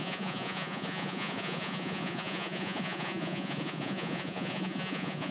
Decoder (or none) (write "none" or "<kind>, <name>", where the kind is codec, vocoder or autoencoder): vocoder, Vocos